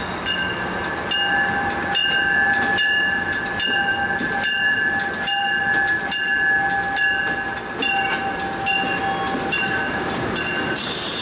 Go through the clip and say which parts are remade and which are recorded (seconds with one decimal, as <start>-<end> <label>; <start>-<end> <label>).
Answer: 0.0-11.2 recorded